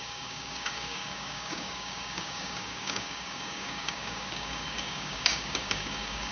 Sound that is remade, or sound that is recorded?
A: remade